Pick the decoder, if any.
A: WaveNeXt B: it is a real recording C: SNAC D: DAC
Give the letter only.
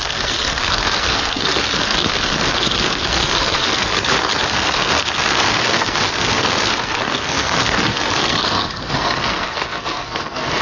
C